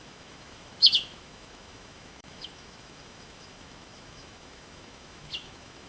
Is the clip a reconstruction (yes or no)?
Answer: yes